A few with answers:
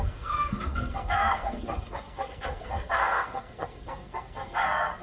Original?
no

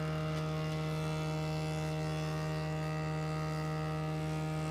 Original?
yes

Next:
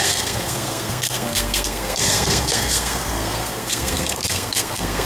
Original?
no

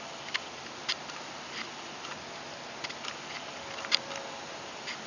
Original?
yes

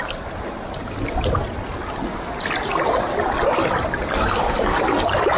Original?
yes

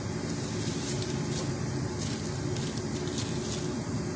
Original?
yes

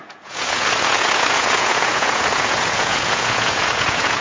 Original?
no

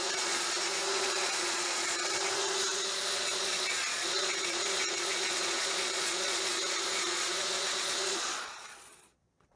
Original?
no